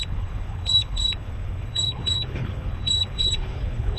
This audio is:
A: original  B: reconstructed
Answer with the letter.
B